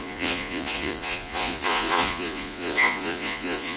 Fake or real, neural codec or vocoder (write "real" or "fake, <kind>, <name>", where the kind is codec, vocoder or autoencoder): fake, vocoder, Vocos